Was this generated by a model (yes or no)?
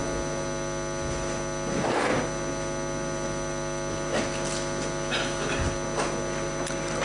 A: no